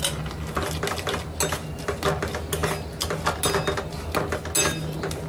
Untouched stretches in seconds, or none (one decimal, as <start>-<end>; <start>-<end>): 0.0-5.3